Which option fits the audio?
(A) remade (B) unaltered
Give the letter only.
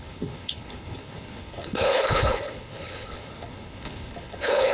A